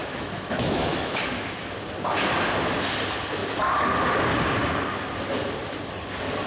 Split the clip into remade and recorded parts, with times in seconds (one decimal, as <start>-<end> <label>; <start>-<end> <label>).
0.0-1.6 remade; 1.6-6.5 recorded